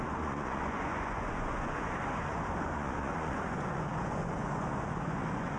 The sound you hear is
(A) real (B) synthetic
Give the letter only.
B